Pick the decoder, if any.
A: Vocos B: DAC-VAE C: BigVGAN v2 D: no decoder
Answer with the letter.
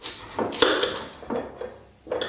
D